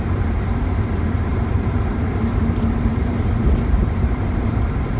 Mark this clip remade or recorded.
remade